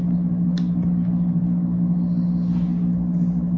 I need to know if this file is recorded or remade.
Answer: recorded